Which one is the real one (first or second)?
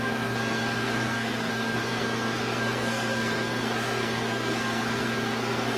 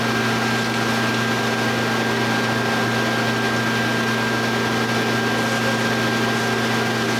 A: second